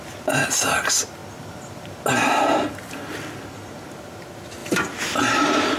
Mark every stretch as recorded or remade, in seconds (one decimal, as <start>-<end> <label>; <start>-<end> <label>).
0.0-4.6 recorded; 4.6-5.8 remade